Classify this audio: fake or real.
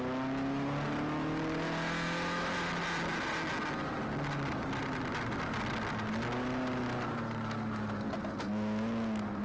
real